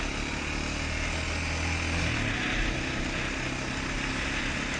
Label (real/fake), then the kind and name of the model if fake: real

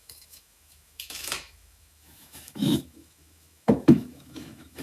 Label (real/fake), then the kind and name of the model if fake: fake, autoencoder, DAC-VAE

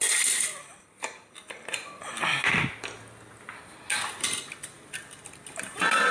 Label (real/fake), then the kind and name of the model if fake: real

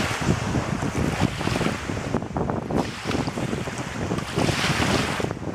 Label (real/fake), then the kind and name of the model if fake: real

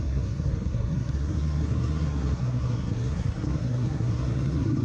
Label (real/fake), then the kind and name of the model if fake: fake, codec, SNAC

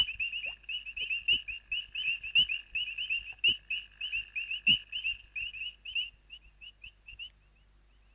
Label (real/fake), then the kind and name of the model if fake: real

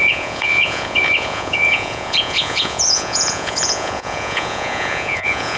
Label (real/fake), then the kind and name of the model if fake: fake, vocoder, Vocos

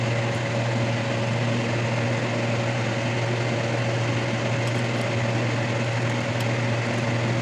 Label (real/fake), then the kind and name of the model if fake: real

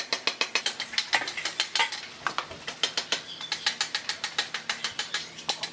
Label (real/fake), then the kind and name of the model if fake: real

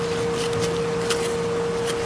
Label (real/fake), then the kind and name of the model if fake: fake, vocoder, BigVGAN v2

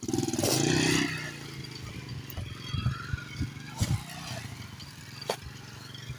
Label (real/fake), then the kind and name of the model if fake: real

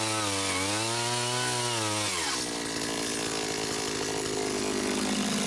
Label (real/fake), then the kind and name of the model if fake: real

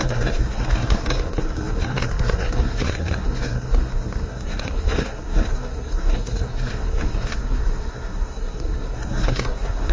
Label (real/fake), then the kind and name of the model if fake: fake, codec, SNAC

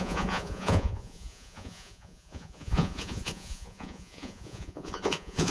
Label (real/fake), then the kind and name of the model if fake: fake, vocoder, Vocos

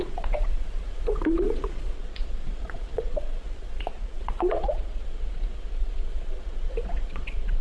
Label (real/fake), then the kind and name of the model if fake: fake, vocoder, Vocos